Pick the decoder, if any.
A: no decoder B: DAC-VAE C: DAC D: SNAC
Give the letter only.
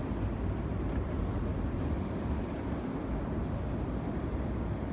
A